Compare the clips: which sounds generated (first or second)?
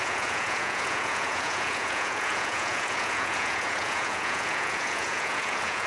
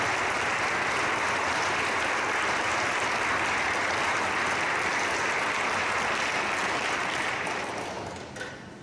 first